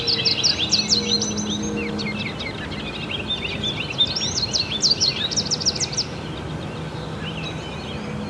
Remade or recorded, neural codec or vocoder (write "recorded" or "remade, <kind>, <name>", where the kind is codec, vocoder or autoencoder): recorded